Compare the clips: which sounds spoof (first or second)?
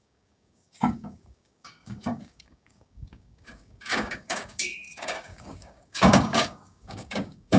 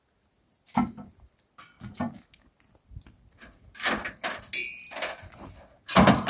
first